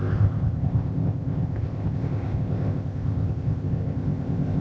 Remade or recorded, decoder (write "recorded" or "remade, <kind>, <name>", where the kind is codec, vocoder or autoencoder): remade, codec, ZipCodec